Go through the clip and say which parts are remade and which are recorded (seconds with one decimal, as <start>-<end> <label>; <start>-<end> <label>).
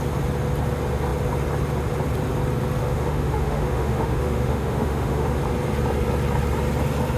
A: 0.0-2.8 recorded; 2.8-5.4 remade; 5.4-7.2 recorded